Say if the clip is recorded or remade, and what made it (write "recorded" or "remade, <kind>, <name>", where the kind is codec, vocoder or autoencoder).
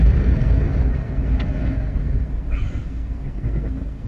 remade, codec, SNAC